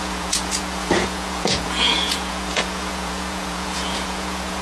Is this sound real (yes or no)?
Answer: no